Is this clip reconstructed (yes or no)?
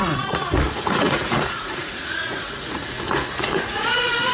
yes